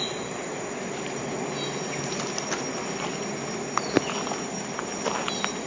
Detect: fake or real real